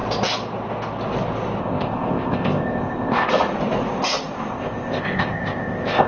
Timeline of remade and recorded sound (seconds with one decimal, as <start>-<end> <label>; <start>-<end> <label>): 0.0-1.6 recorded; 1.6-3.3 remade; 3.3-4.5 recorded; 4.5-6.1 remade